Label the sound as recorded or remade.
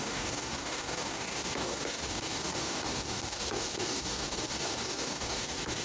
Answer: remade